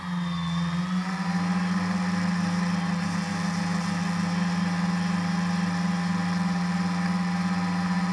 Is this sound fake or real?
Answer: real